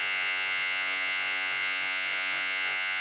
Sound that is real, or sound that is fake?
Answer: fake